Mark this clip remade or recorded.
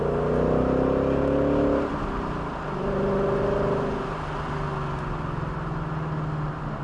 recorded